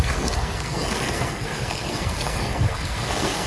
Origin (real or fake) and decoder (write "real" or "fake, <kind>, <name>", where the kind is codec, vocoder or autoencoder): fake, codec, SNAC